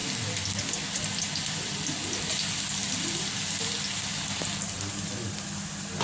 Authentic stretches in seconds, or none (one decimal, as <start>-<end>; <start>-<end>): 0.0-6.0